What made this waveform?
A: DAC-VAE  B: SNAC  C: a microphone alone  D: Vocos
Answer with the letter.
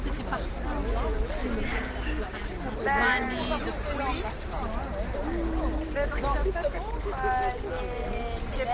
C